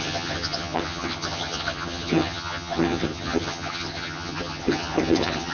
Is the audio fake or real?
fake